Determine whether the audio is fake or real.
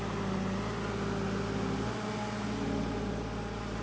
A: real